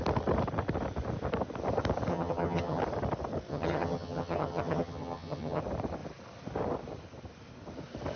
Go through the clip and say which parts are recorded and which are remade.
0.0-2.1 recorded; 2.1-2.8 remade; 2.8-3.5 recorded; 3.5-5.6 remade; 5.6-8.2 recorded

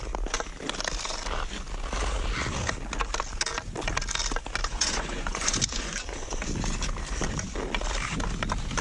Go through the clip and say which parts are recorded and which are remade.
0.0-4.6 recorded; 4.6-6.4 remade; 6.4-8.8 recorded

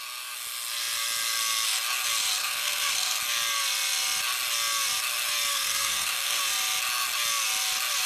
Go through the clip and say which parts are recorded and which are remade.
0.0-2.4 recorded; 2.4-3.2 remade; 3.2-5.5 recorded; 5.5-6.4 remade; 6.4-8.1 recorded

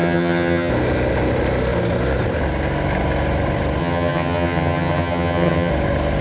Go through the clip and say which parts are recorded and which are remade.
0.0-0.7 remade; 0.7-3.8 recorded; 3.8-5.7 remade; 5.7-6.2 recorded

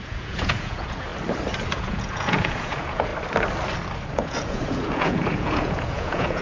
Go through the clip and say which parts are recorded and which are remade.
0.0-1.1 remade; 1.1-1.7 recorded; 1.7-3.1 remade; 3.1-4.1 recorded; 4.1-6.4 remade

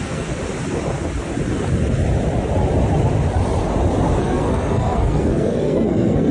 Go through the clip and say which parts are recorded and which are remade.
0.0-0.4 remade; 0.4-4.2 recorded; 4.2-6.3 remade

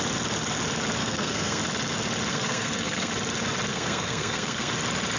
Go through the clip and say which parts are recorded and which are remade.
0.0-1.0 recorded; 1.0-1.6 remade; 1.6-2.3 recorded; 2.3-3.1 remade; 3.1-3.7 recorded; 3.7-4.7 remade; 4.7-5.2 recorded

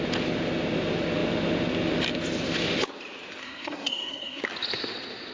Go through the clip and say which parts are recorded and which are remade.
0.0-3.4 recorded; 3.4-4.4 remade; 4.4-5.3 recorded